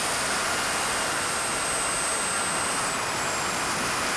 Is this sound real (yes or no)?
yes